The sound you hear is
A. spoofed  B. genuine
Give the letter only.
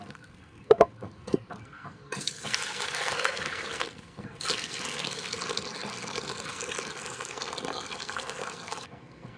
A